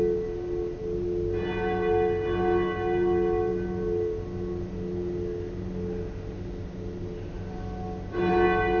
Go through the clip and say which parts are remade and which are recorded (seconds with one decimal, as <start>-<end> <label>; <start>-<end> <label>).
0.0-8.8 recorded